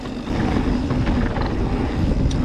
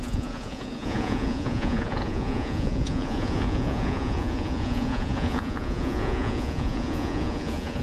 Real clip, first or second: first